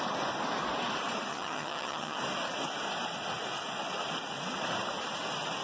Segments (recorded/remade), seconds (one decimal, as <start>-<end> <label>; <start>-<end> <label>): 0.0-1.3 recorded; 1.3-2.2 remade; 2.2-5.6 recorded